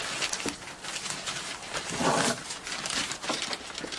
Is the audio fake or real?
real